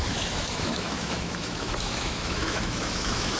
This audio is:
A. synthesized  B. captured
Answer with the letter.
A